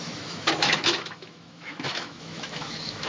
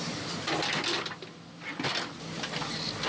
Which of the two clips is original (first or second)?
second